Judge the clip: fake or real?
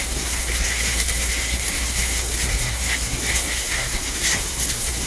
fake